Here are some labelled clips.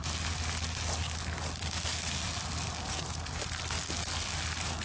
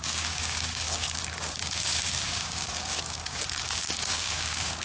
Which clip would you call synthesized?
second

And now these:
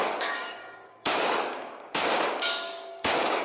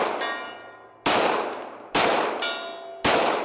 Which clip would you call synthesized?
first